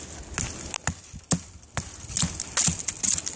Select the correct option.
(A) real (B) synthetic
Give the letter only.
A